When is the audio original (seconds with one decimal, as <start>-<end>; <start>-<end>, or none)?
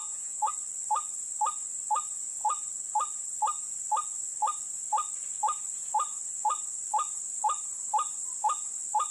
0.5-9.1